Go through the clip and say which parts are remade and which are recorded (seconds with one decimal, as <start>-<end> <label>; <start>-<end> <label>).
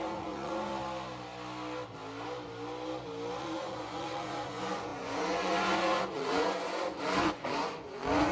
0.0-0.7 remade; 0.7-3.4 recorded; 3.4-8.3 remade